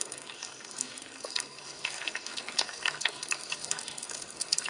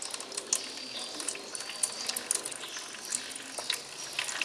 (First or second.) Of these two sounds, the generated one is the first